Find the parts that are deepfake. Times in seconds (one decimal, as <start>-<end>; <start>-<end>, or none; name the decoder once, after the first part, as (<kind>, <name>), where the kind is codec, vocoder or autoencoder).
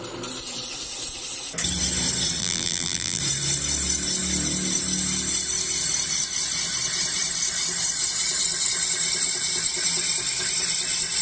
2.4-3.2 (vocoder, BigVGAN v2)